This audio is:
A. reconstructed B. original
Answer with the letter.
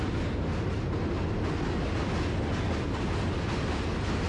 B